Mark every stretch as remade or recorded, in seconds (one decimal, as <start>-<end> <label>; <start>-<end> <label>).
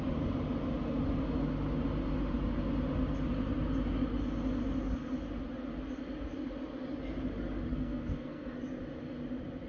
0.0-7.7 recorded; 7.7-8.6 remade; 8.6-9.7 recorded